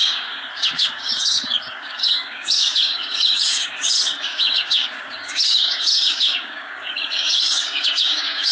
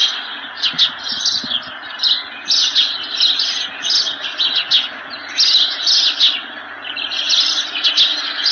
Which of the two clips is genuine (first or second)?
second